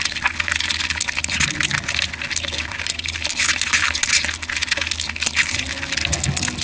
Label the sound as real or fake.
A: real